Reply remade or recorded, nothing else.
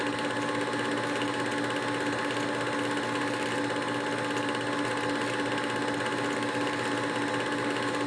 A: recorded